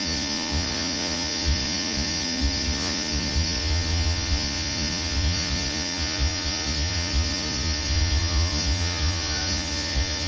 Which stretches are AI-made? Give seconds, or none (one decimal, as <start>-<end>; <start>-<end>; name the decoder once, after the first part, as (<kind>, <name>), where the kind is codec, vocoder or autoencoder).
0.0-10.3 (vocoder, Vocos)